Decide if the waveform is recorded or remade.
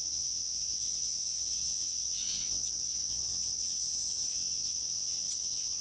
remade